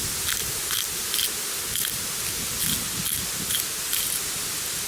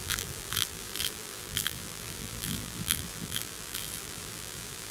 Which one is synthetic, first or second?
second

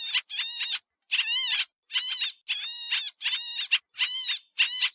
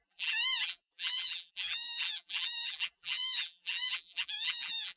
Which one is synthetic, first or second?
second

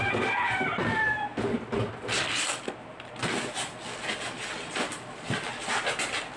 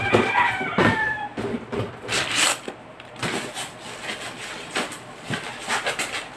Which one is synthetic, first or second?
second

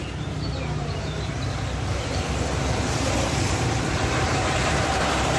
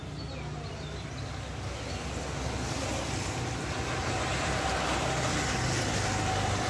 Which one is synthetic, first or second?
first